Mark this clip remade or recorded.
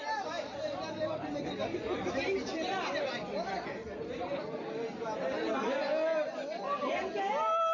recorded